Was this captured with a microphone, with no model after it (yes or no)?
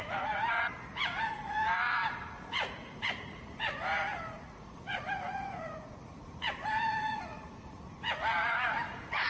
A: no